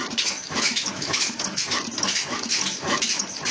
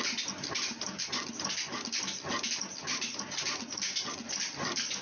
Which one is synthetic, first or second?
first